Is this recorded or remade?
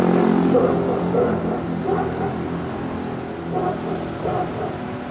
recorded